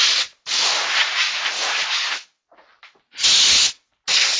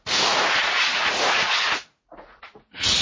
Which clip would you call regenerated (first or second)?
second